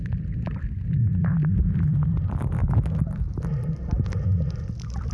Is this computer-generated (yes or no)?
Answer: no